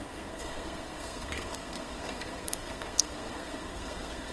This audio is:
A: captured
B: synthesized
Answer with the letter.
B